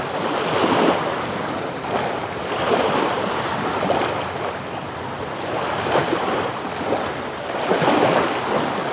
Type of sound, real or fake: real